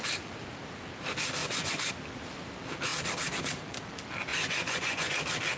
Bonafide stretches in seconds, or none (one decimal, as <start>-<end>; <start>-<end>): 0.0-1.4; 1.9-4.3; 5.1-5.6